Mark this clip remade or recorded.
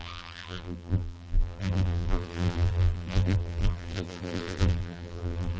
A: remade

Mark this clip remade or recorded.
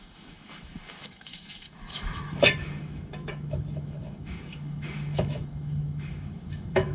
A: remade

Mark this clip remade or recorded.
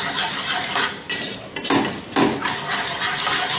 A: recorded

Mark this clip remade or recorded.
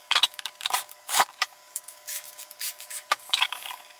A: remade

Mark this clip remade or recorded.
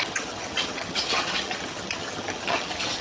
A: remade